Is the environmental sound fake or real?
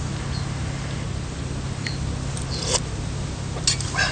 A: real